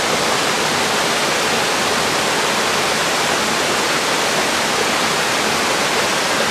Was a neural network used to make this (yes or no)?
no